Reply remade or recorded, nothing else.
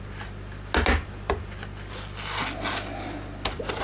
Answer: recorded